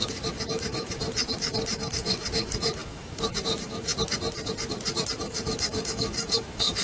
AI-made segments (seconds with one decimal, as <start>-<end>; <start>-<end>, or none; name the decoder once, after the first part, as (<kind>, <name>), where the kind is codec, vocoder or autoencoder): 0.0-1.0 (autoencoder, DAC-VAE); 1.7-3.9; 5.2-6.8